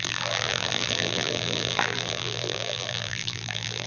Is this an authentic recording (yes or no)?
no